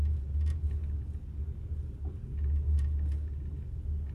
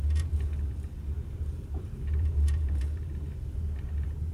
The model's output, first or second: second